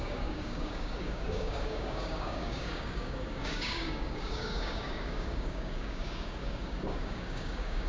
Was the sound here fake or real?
fake